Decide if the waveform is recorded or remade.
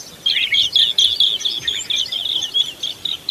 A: recorded